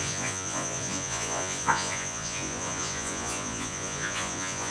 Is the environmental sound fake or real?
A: fake